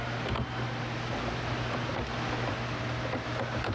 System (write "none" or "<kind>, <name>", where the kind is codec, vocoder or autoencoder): none